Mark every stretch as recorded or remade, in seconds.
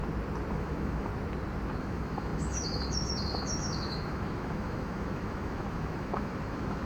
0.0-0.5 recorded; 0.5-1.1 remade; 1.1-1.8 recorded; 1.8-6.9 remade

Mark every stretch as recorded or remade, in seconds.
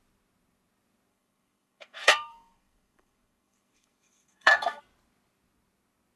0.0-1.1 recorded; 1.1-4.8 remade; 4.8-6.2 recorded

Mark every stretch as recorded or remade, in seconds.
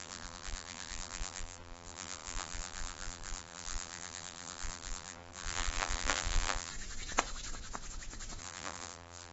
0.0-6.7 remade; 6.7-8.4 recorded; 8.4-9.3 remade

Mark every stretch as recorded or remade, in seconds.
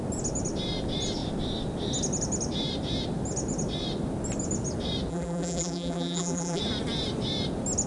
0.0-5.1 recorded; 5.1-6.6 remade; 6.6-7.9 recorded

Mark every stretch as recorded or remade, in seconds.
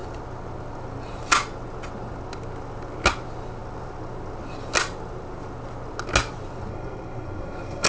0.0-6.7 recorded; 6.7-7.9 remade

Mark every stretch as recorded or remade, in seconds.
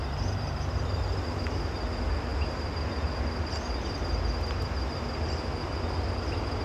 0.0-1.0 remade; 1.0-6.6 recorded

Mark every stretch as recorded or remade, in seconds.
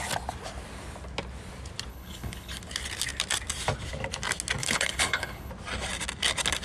0.0-1.9 recorded; 1.9-2.6 remade; 2.6-4.6 recorded; 4.6-5.5 remade; 5.5-6.6 recorded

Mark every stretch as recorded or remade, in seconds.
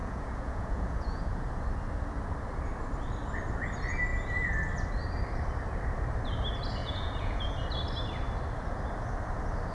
0.0-1.5 remade; 1.5-6.8 recorded; 6.8-7.5 remade; 7.5-9.7 recorded